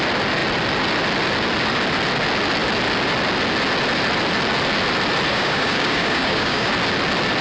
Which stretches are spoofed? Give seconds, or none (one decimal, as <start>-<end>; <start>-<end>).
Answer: 5.3-6.7